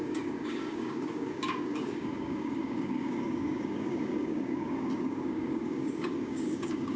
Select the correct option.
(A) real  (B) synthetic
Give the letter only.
B